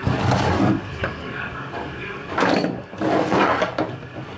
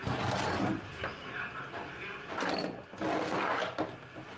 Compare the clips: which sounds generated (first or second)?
first